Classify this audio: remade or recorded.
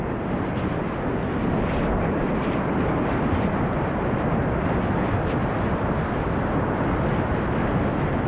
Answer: recorded